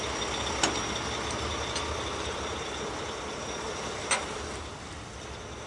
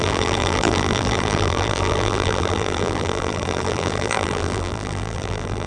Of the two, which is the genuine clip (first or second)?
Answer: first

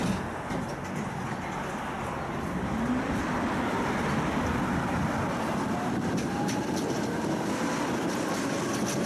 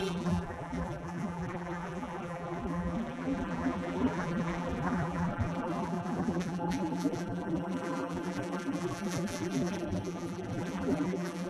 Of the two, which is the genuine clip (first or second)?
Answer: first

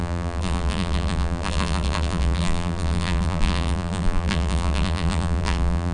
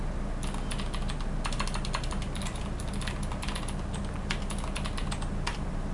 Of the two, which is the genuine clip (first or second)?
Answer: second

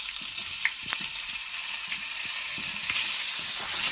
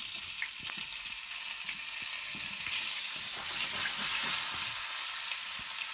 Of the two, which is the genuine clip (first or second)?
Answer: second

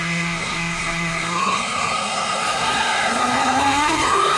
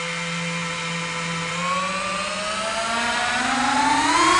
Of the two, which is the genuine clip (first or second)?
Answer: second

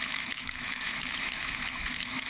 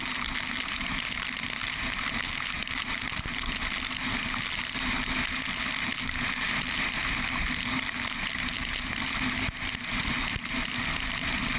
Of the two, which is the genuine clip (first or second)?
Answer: second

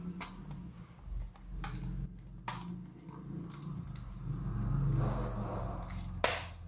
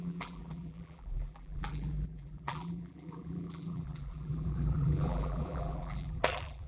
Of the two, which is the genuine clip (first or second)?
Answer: first